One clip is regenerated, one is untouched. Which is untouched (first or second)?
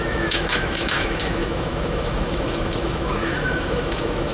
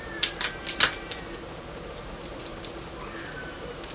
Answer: second